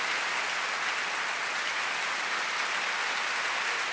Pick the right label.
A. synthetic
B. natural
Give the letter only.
B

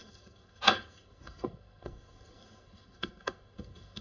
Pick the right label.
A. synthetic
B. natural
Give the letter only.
A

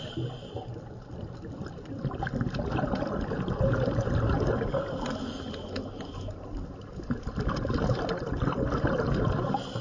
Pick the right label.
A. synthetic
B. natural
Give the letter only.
B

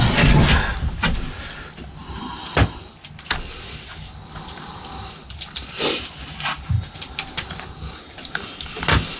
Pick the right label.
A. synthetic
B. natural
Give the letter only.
B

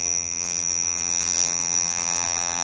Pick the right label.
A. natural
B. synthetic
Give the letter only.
B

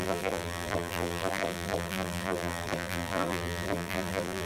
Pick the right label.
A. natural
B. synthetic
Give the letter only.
B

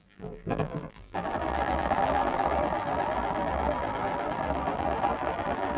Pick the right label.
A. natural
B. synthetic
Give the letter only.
B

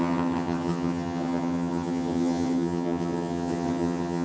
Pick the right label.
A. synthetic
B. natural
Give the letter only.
A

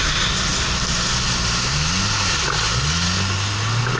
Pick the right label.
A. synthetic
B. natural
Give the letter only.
B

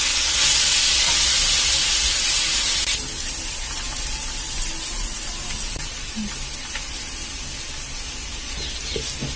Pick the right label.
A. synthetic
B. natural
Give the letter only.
B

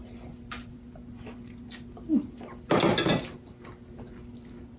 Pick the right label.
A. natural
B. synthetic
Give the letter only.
A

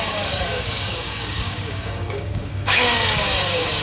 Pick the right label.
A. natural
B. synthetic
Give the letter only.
B